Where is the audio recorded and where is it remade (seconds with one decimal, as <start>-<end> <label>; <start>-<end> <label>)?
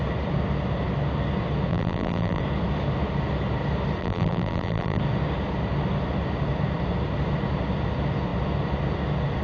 0.0-1.7 recorded; 1.7-2.4 remade; 2.4-4.0 recorded; 4.0-5.0 remade; 5.0-9.4 recorded